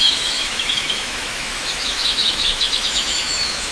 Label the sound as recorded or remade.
remade